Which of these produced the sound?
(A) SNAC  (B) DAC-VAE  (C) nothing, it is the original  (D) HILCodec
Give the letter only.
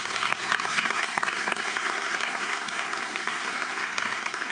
A